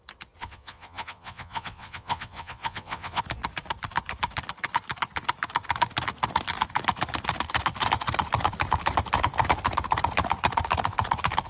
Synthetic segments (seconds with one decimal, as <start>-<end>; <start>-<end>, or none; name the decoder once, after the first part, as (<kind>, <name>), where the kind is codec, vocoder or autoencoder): 0.4-3.2 (vocoder, Vocos)